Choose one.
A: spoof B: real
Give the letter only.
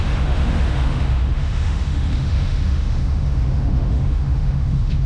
A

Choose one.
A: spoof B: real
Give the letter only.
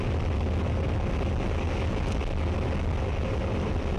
B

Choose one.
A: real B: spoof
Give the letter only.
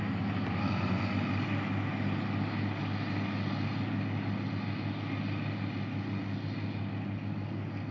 A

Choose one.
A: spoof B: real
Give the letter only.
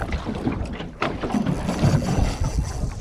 B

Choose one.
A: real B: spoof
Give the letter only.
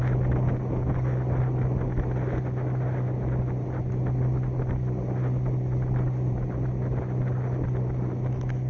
A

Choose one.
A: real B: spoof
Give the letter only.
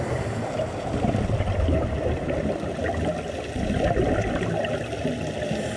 A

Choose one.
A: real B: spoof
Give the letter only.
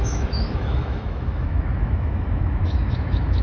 B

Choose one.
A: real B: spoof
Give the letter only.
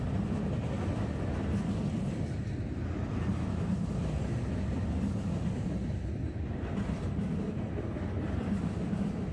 A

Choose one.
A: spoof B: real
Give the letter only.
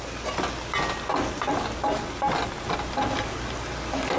B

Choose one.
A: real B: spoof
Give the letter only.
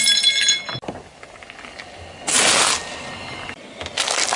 A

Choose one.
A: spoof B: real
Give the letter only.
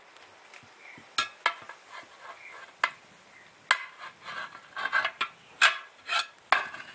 B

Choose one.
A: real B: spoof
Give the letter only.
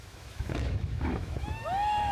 B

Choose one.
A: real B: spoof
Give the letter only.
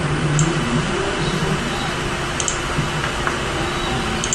A